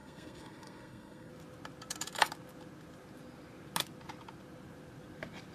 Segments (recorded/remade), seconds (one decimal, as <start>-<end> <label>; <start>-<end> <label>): 0.0-1.3 remade; 1.3-5.5 recorded